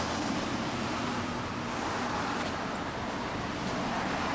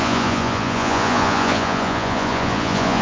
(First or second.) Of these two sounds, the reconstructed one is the second